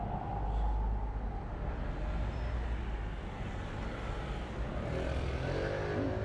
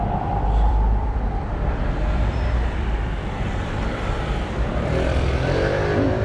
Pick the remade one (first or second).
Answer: second